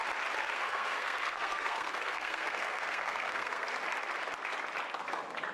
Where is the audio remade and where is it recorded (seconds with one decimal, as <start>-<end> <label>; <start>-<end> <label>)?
0.0-0.4 recorded; 0.4-3.7 remade; 3.7-5.5 recorded